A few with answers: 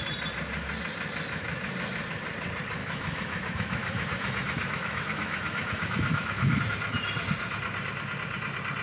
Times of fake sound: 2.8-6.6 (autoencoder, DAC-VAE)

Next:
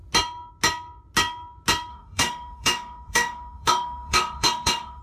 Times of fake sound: 1.9-5.0 (autoencoder, DAC-VAE)